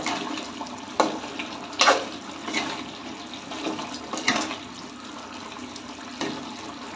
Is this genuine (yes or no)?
yes